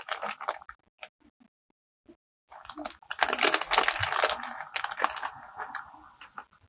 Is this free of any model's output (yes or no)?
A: yes